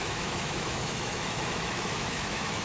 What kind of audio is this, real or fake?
fake